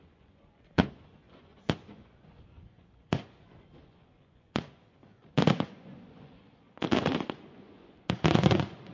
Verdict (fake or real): fake